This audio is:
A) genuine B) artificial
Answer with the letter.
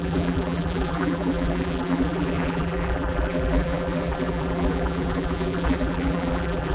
B